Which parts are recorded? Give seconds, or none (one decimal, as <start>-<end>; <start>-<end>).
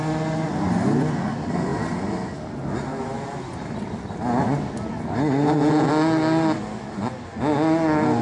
0.0-8.2